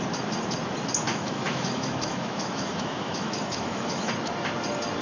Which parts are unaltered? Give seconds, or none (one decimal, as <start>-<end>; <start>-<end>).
0.0-1.1; 4.1-5.0